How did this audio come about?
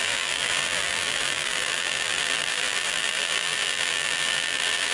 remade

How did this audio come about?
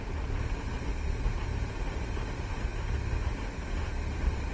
remade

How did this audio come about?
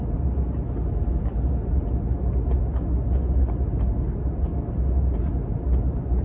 recorded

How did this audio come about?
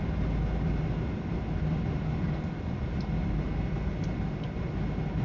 recorded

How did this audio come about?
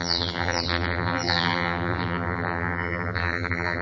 remade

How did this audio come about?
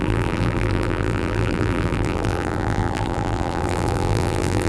remade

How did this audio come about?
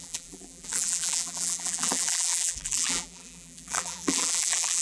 remade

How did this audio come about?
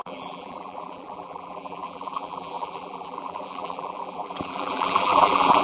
remade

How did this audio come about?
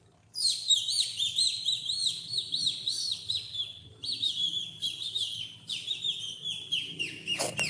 remade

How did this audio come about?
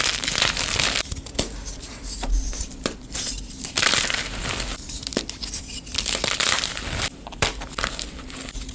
remade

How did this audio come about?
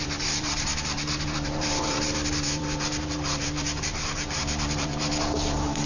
remade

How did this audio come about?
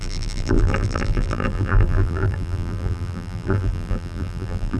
remade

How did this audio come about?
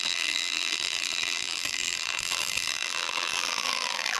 remade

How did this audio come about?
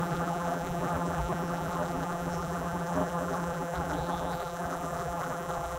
remade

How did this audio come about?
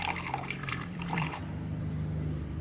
remade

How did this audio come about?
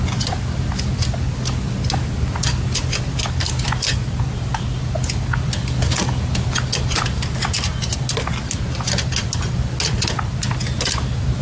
recorded